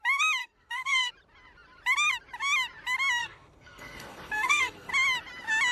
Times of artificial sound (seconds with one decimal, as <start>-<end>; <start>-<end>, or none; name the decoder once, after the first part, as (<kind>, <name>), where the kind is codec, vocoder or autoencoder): 0.4-1.1 (codec, SNAC); 3.2-4.9